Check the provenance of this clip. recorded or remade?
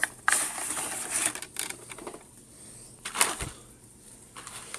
recorded